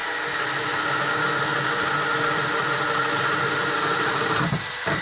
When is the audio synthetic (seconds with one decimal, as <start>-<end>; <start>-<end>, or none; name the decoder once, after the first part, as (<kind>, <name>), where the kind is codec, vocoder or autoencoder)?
none